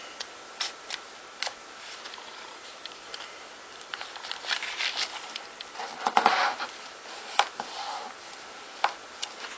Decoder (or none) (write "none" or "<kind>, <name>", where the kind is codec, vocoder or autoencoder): vocoder, BigVGAN v2